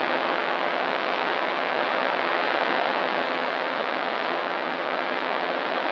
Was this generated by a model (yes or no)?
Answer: yes